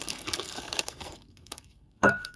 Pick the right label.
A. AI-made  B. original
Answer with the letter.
A